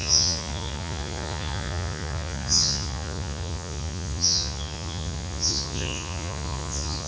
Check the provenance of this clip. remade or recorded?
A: remade